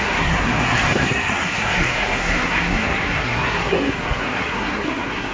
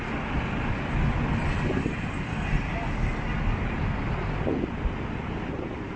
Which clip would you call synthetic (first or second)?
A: first